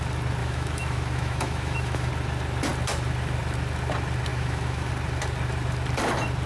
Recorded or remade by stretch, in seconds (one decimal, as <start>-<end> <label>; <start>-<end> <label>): 0.0-0.4 recorded; 0.4-2.1 remade; 2.1-4.3 recorded; 4.3-4.9 remade; 4.9-6.5 recorded